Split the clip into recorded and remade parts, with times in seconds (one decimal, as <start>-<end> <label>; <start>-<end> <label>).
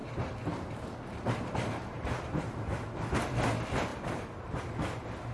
0.0-3.2 remade; 3.2-3.9 recorded; 3.9-4.6 remade; 4.6-5.3 recorded